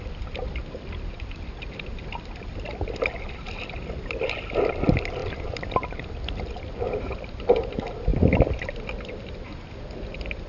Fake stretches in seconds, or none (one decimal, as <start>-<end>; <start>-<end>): none